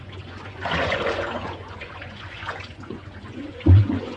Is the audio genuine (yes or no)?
no